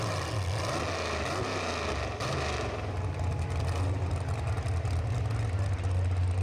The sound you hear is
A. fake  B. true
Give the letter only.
B